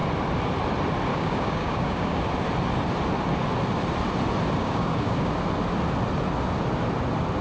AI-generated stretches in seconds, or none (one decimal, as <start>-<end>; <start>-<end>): 1.1-2.2; 4.6-5.3